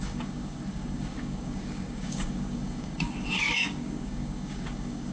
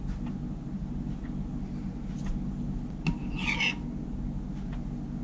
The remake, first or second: first